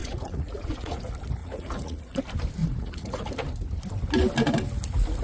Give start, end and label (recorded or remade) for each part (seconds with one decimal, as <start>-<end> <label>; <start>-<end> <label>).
0.0-1.0 remade; 1.0-1.4 recorded; 1.4-2.2 remade; 2.2-2.6 recorded; 2.6-3.3 remade; 3.3-5.2 recorded

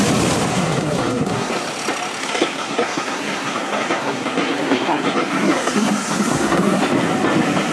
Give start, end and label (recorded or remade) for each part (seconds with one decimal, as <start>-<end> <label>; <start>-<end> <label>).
0.0-0.5 recorded; 0.5-1.5 remade; 1.5-2.2 recorded; 2.2-6.8 remade; 6.8-7.7 recorded

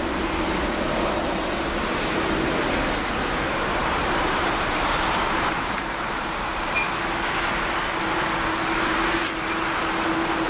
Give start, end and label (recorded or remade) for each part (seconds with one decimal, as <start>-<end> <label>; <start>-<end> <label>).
0.0-3.8 recorded; 3.8-7.0 remade; 7.0-10.5 recorded

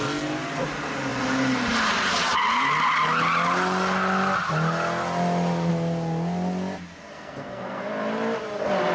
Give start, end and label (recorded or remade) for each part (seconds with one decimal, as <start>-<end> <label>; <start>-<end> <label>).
0.0-7.1 recorded; 7.1-7.9 remade; 7.9-8.9 recorded

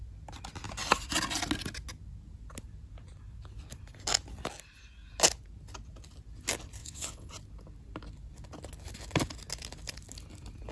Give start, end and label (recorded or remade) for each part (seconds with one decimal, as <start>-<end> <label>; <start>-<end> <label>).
0.0-6.8 recorded; 6.8-7.3 remade; 7.3-10.7 recorded

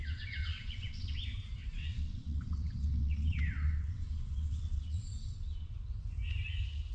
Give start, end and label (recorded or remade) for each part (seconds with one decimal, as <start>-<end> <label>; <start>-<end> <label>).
0.0-1.2 remade; 1.2-1.6 recorded; 1.6-5.7 remade; 5.7-6.9 recorded

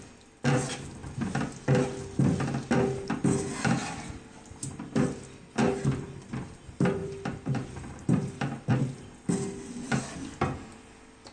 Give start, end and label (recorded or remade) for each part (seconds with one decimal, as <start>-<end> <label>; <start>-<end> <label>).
0.0-7.0 recorded; 7.0-8.8 remade; 8.8-11.3 recorded